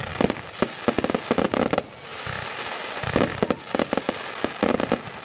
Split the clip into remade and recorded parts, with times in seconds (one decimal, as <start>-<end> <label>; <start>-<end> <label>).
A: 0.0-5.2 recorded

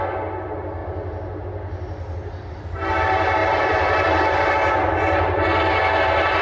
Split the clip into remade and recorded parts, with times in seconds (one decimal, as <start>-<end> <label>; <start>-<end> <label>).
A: 0.0-3.4 recorded; 3.4-4.5 remade; 4.5-6.4 recorded

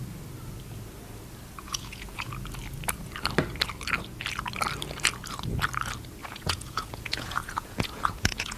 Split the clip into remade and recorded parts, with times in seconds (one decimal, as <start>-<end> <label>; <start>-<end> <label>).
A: 0.0-1.6 recorded; 1.6-2.3 remade; 2.3-6.2 recorded; 6.2-8.6 remade